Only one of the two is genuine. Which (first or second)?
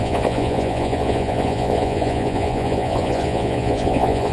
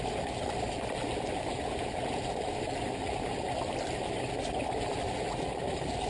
second